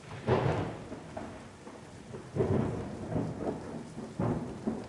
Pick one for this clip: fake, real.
real